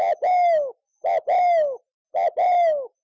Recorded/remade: recorded